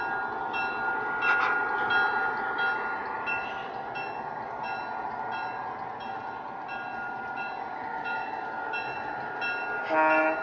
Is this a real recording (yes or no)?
yes